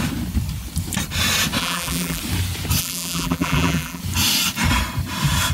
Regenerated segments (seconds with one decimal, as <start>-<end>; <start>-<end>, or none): 1.6-2.2; 2.8-4.0